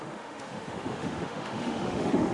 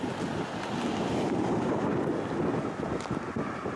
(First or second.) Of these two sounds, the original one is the second